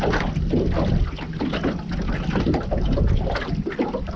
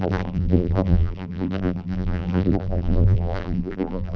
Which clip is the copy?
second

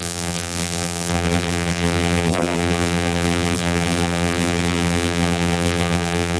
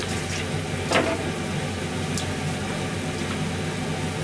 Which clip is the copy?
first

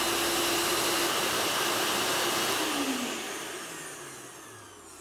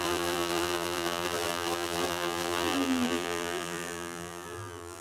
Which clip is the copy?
second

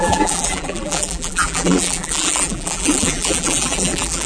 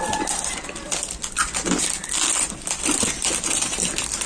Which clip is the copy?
first